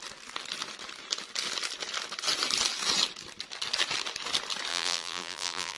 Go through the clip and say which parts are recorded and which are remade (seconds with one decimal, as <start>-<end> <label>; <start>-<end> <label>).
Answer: 0.0-4.7 recorded; 4.7-5.8 remade